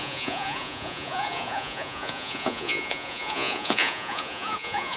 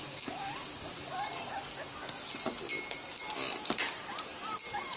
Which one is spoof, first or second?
first